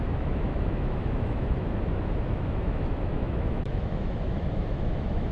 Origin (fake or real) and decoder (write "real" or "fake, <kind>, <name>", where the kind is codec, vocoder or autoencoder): fake, autoencoder, DAC-VAE